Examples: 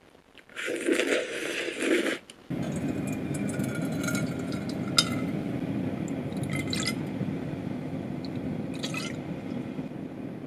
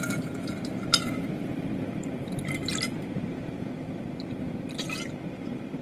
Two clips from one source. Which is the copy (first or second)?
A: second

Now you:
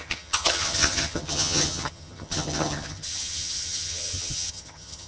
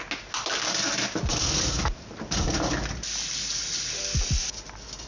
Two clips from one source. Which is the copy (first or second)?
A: first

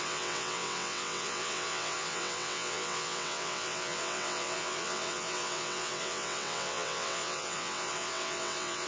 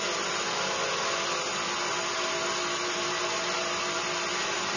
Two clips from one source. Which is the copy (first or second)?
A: first